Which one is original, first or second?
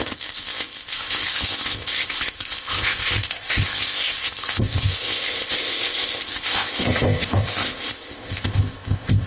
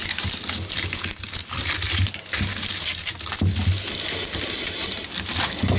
second